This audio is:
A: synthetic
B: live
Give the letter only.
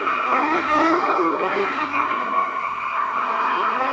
A